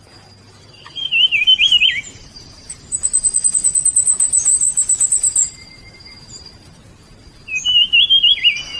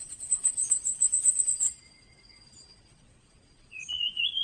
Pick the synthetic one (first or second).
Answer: second